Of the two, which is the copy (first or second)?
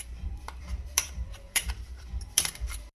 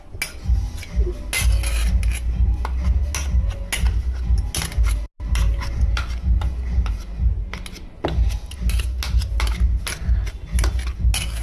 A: first